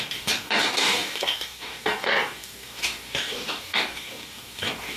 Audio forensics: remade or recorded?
remade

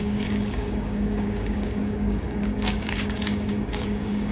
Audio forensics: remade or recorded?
remade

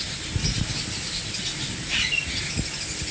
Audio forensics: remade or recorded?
recorded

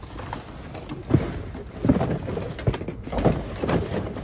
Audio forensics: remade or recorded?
recorded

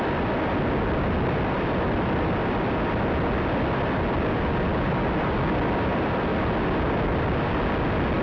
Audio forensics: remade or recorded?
recorded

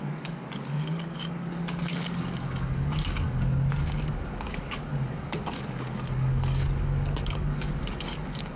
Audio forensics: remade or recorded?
remade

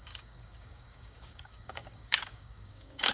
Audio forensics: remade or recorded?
remade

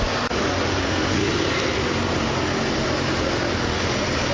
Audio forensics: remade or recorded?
recorded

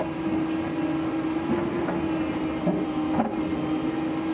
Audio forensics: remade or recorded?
recorded